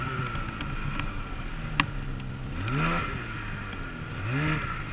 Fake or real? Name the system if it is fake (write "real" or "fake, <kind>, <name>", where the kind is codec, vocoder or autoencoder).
real